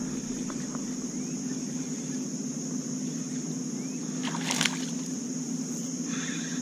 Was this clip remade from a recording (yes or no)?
no